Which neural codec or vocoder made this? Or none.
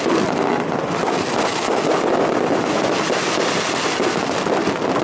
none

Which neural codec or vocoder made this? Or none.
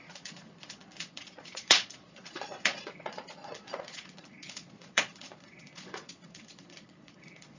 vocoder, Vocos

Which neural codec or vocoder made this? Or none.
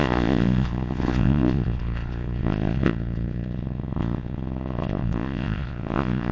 vocoder, Vocos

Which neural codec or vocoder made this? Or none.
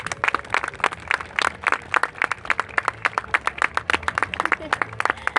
none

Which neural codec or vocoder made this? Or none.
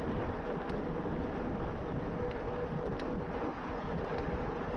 none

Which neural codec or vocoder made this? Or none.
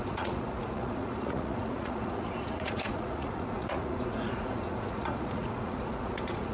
vocoder, Vocos